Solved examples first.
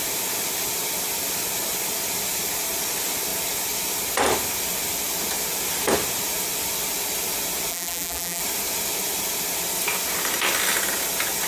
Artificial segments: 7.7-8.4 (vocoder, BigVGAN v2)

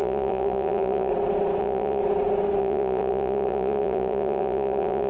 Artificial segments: 0.0-1.1 (vocoder, Vocos); 1.6-2.0; 2.6-5.1